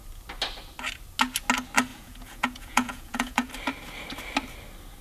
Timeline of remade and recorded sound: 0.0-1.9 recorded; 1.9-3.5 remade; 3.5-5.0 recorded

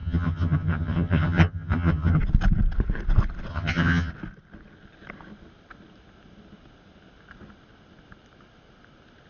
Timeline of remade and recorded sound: 0.0-2.2 remade; 2.2-3.5 recorded; 3.5-4.1 remade; 4.1-9.3 recorded

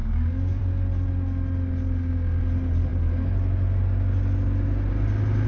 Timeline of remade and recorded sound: 0.0-0.6 remade; 0.6-5.5 recorded

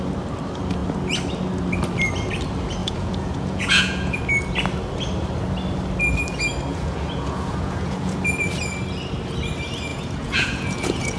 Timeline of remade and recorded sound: 0.0-2.8 recorded; 2.8-4.2 remade; 4.2-6.7 recorded; 6.7-8.2 remade; 8.2-9.9 recorded; 9.9-11.2 remade

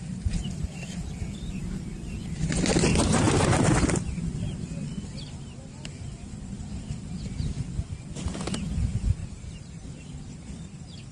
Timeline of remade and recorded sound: 0.0-11.1 recorded

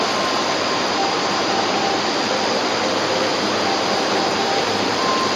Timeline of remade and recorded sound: 0.0-1.0 recorded; 1.0-2.0 remade; 2.0-3.3 recorded; 3.3-5.0 remade; 5.0-5.4 recorded

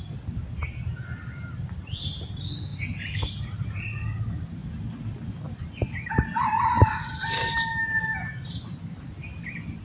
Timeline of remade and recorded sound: 0.0-9.8 recorded